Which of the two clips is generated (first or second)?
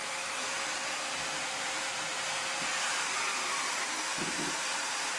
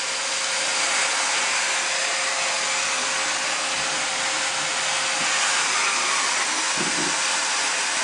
first